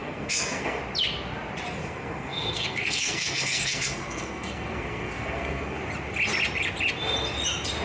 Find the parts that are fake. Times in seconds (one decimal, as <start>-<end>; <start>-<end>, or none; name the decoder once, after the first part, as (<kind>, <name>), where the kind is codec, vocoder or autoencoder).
0.0-0.8 (codec, SNAC); 1.8-5.8